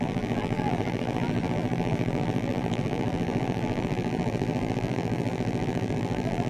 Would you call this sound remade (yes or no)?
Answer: yes